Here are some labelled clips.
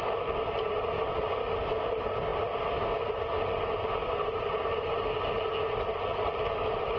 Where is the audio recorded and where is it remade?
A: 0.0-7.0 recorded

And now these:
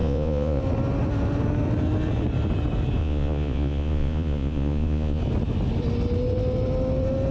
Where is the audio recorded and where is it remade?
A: 0.0-0.6 remade; 0.6-3.0 recorded; 3.0-5.2 remade; 5.2-7.3 recorded

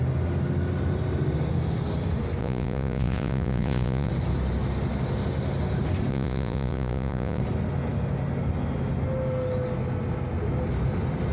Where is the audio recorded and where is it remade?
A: 0.0-2.4 recorded; 2.4-4.1 remade; 4.1-6.1 recorded; 6.1-7.4 remade; 7.4-11.3 recorded

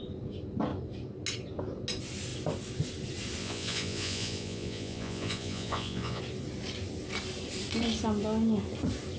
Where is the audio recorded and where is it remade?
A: 0.0-3.4 recorded; 3.4-6.2 remade; 6.2-9.2 recorded

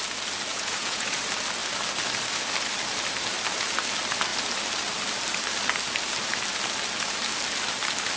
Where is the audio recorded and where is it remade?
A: 0.0-0.5 recorded; 0.5-1.2 remade; 1.2-8.2 recorded

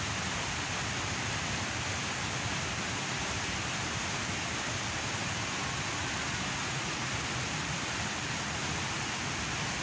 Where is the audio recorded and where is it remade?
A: 0.0-6.6 recorded; 6.6-7.1 remade; 7.1-9.8 recorded

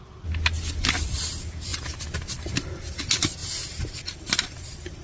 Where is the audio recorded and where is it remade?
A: 0.0-5.0 recorded